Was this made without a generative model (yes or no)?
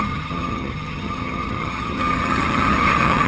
no